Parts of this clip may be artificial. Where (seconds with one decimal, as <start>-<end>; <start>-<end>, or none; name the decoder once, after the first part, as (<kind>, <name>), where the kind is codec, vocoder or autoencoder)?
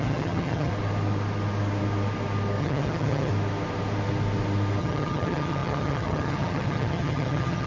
0.0-0.7 (vocoder, HiFi-GAN); 2.6-3.3; 4.8-7.7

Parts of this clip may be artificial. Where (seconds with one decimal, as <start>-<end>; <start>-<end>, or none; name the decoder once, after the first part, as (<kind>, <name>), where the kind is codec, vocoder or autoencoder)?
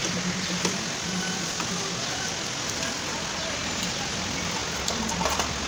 none